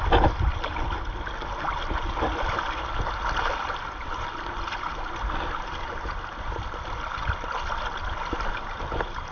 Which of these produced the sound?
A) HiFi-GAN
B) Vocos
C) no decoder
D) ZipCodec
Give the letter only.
C